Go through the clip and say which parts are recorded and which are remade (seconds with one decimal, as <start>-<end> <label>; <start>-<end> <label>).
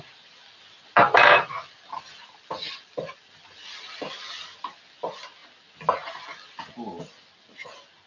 0.0-8.1 recorded